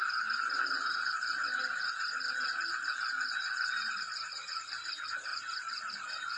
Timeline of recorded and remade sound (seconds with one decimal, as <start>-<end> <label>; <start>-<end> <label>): 0.0-6.4 recorded